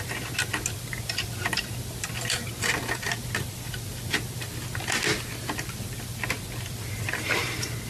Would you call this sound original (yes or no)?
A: yes